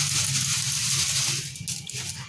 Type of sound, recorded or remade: recorded